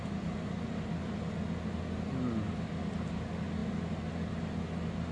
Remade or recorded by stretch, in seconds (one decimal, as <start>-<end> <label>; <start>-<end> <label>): 0.0-5.1 recorded